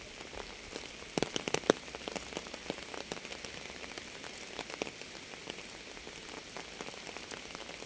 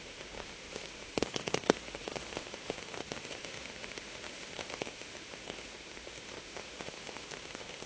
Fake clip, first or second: second